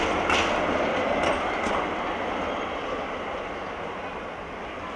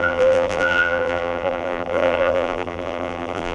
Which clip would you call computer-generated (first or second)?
second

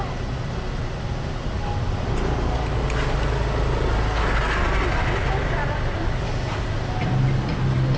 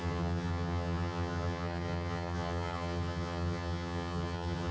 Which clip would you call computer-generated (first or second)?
second